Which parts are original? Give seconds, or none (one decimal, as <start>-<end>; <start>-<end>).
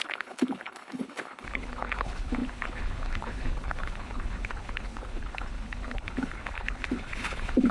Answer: none